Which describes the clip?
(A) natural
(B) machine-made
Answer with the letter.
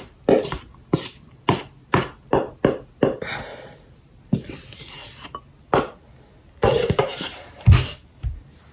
A